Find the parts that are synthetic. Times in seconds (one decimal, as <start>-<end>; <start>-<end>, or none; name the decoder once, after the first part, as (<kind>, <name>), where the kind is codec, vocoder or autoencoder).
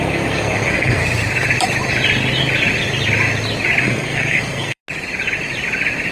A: 0.0-1.0 (codec, SNAC); 3.8-4.8